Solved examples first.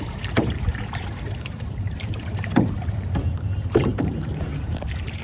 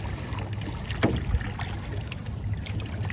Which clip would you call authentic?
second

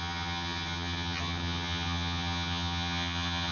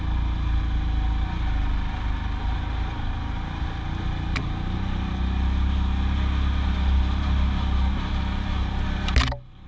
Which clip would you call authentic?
second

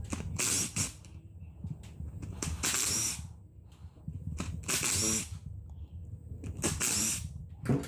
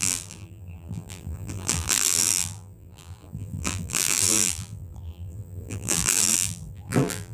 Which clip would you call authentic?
first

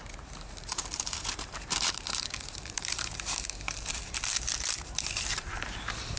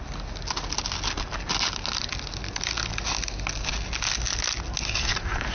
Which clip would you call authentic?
second